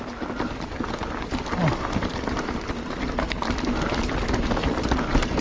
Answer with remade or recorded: recorded